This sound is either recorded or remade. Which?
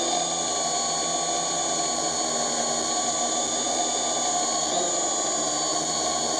recorded